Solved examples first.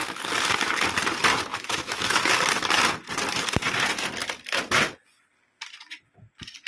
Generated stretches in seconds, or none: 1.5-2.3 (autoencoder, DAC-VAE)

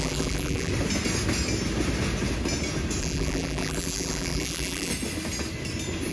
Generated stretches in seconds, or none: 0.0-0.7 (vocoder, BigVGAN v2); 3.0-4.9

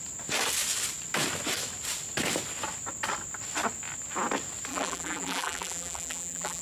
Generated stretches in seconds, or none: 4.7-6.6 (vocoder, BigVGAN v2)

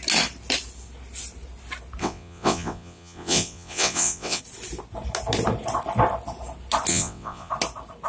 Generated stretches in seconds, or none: 2.0-4.4 (vocoder, WaveNeXt); 6.9-7.5

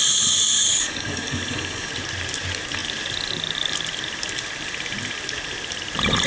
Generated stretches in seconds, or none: 0.7-1.9 (codec, DAC)

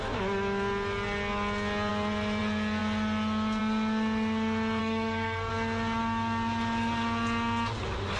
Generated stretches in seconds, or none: 4.8-5.5 (codec, SNAC)